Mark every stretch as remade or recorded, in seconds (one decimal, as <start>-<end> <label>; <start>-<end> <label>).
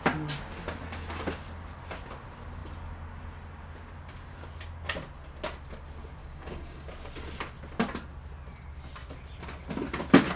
0.0-6.2 recorded; 6.2-6.9 remade; 6.9-10.4 recorded